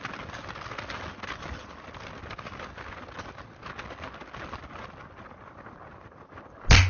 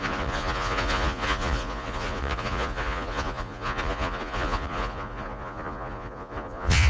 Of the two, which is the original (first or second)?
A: first